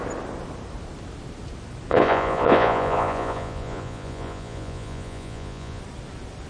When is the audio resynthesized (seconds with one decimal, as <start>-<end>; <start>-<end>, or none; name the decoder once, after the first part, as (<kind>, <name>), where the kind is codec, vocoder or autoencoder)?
1.9-5.8 (vocoder, Vocos)